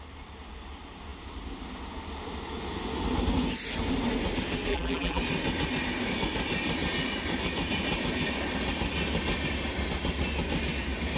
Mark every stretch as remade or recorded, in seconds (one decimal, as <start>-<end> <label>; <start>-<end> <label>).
0.0-4.7 recorded; 4.7-5.2 remade; 5.2-11.2 recorded